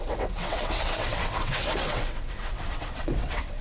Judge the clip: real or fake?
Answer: fake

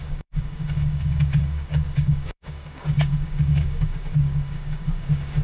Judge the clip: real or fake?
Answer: fake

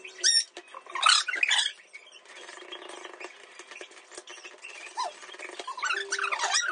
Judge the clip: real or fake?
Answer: real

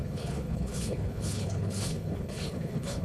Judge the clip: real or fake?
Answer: fake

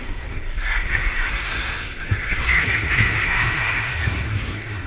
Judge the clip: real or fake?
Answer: fake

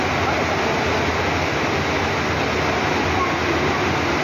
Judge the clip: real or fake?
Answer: real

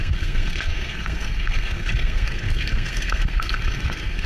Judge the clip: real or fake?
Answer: fake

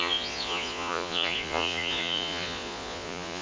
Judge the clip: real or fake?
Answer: fake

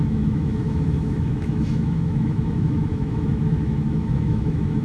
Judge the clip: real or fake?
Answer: fake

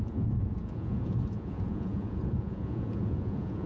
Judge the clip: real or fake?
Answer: fake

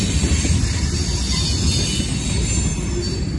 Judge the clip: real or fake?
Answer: real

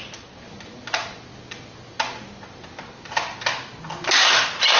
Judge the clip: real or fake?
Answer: real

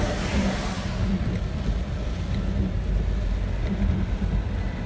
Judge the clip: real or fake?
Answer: real